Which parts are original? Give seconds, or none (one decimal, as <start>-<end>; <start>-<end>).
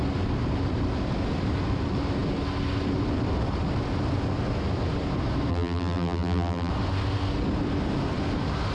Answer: 0.0-5.5; 6.7-8.7